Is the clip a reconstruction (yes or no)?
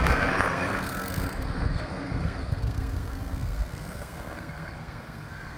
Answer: yes